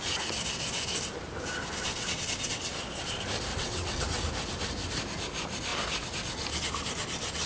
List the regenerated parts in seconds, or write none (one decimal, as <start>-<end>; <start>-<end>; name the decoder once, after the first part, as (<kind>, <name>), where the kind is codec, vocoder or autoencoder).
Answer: 1.9-2.6 (vocoder, WaveNeXt); 3.5-4.2